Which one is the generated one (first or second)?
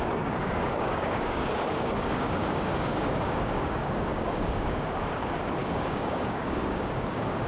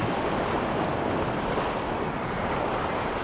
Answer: first